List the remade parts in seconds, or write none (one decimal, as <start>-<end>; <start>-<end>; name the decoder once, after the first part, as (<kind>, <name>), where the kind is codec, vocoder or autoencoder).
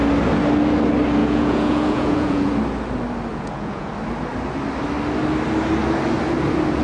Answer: 1.2-2.5 (vocoder, Vocos); 3.3-3.9